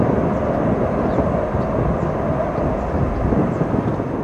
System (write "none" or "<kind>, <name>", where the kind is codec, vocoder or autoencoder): none